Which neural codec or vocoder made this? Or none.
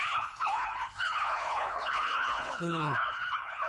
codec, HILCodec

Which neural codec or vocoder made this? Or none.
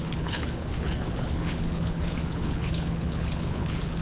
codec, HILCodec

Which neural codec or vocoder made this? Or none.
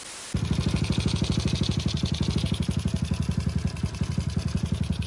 none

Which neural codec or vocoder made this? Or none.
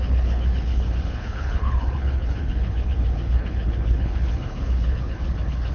codec, HILCodec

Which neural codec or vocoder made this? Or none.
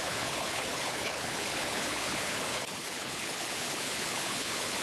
codec, HILCodec